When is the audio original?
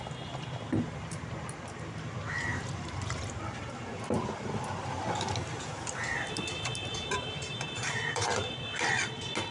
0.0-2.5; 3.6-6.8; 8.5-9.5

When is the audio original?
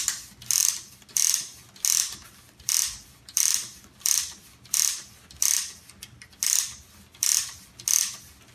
0.0-8.5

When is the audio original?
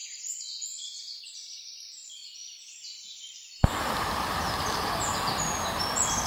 1.2-6.3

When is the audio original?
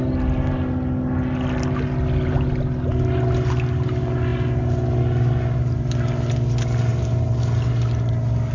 0.0-8.5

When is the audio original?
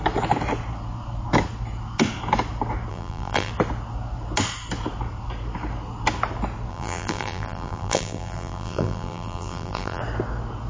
0.0-2.9; 3.5-6.7; 10.0-10.7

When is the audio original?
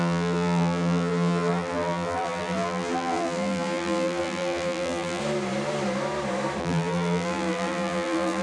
5.2-6.6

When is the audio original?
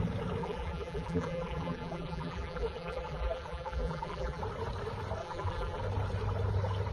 0.0-0.4; 4.4-5.2; 5.8-6.9